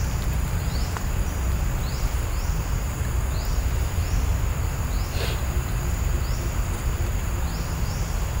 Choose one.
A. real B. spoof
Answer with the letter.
A